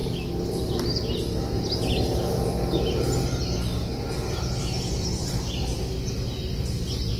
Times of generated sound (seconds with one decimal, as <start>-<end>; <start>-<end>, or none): 4.3-5.7; 6.7-7.2